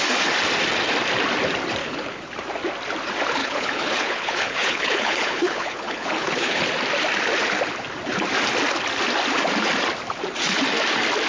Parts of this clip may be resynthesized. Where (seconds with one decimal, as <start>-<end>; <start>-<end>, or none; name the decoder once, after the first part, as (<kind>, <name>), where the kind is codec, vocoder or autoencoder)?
1.8-2.3 (codec, HILCodec); 3.4-6.7